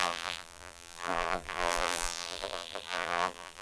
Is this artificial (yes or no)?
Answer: yes